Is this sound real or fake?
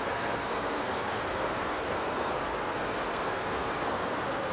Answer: fake